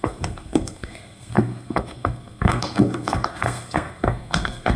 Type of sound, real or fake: fake